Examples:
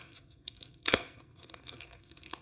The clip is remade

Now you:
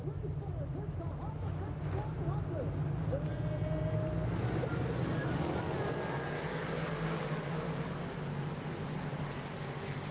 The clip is recorded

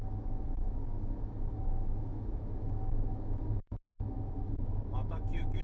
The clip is remade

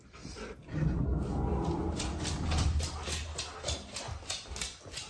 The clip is recorded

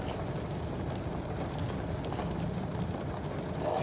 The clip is recorded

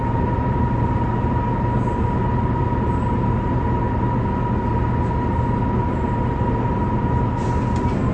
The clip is recorded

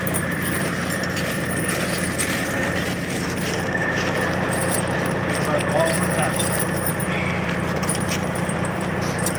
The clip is remade